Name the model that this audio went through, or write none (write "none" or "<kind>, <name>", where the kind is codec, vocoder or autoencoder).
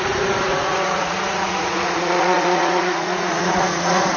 vocoder, Vocos